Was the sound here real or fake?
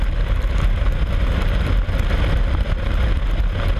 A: real